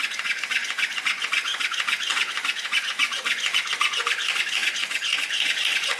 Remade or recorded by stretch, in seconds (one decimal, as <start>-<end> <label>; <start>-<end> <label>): 0.0-6.0 remade